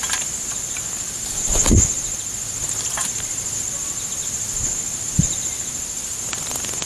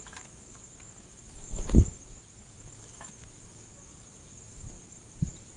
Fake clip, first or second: second